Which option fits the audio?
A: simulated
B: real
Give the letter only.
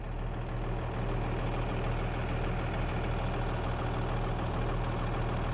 B